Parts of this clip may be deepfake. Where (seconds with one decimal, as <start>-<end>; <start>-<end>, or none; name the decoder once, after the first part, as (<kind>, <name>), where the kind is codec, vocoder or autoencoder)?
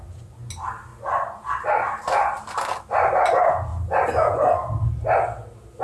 none